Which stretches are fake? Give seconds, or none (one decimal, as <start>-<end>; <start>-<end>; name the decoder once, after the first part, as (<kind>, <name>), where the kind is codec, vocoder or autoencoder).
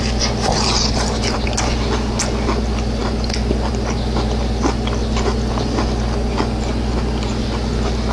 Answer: none